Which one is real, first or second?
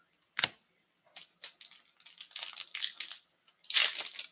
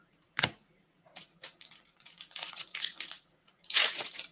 first